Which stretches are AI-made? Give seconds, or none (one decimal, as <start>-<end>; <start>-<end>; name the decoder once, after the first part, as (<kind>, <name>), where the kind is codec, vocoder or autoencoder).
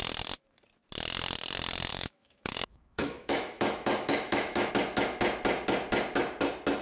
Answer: 1.9-4.7 (autoencoder, DAC-VAE)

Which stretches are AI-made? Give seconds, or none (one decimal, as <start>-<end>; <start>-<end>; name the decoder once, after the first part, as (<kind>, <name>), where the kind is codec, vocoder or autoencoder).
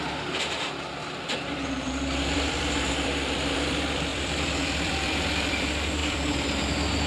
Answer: 0.0-7.1 (vocoder, BigVGAN v2)